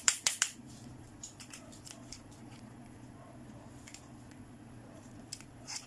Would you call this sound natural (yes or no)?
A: no